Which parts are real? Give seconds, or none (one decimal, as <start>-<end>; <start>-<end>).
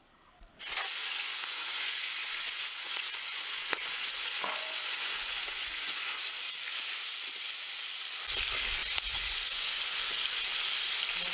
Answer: 0.0-1.2; 6.2-8.8; 9.8-11.3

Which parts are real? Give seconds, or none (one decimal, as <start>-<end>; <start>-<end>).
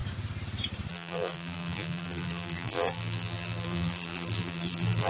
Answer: 0.0-0.9